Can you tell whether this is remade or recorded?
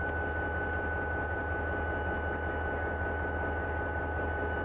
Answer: recorded